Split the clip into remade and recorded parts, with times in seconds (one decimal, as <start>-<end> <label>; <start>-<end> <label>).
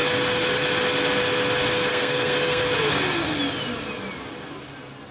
0.0-1.9 recorded; 1.9-2.6 remade; 2.6-5.1 recorded